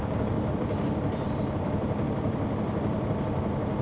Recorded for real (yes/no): no